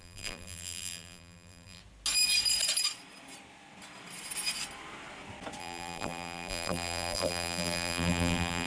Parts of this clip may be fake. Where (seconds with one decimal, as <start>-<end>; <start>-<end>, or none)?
0.0-1.8; 5.6-8.7